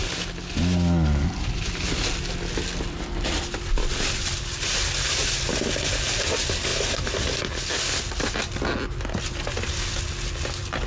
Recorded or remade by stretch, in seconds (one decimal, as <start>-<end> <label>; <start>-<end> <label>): 0.0-10.9 recorded